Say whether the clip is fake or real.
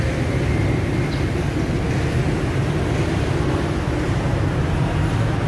real